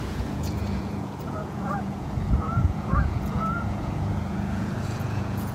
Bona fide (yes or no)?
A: no